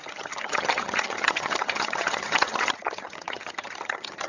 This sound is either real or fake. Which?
fake